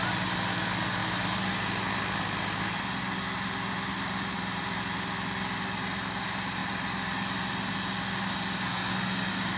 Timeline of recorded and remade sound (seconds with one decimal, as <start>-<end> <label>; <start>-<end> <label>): 0.0-9.6 recorded